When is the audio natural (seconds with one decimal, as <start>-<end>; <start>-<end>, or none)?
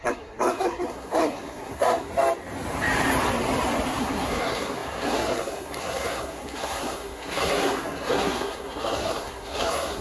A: 2.1-4.0